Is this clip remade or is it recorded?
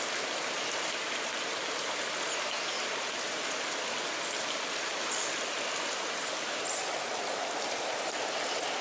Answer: recorded